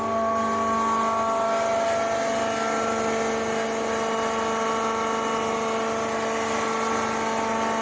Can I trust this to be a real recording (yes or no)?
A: yes